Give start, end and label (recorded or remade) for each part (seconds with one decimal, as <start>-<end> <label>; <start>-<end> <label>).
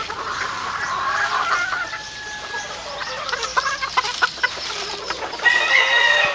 0.0-6.3 recorded